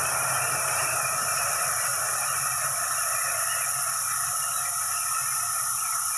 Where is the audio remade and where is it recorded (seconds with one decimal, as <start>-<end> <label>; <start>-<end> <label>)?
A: 0.0-1.9 remade; 1.9-4.7 recorded; 4.7-6.2 remade